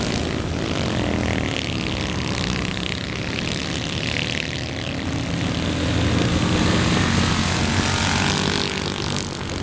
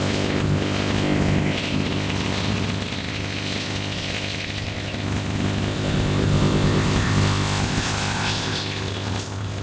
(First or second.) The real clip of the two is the first